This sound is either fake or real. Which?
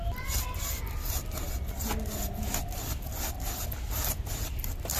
real